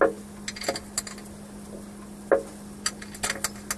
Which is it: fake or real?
real